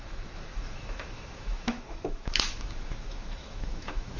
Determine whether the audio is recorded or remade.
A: remade